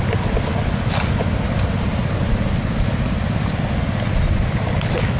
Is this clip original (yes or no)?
yes